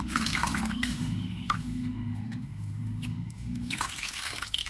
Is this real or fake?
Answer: fake